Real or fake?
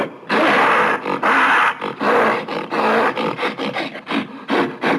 real